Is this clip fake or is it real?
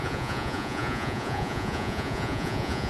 fake